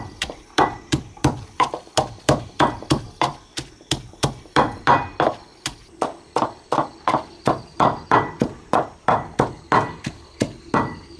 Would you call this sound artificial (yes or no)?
yes